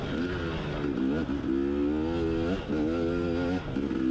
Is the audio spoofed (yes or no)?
no